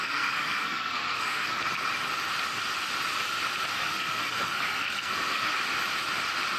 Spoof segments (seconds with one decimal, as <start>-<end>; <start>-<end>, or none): 0.0-1.6; 3.7-5.5